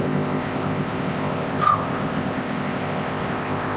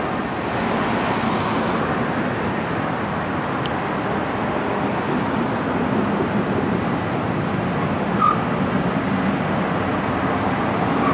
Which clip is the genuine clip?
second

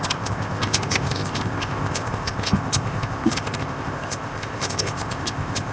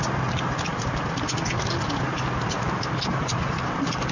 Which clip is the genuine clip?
second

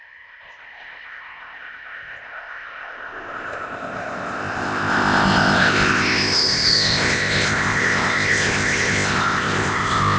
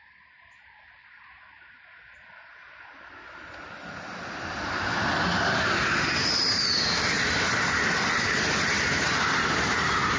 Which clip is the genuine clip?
second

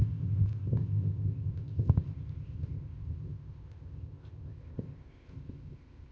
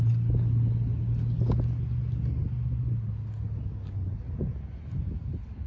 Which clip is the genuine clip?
second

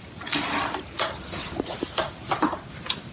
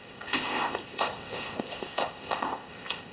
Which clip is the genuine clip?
first